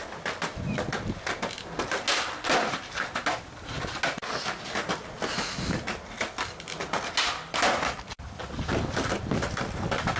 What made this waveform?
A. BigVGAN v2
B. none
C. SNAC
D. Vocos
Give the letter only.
B